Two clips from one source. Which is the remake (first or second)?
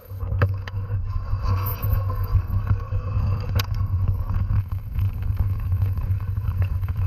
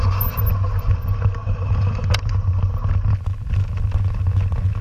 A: first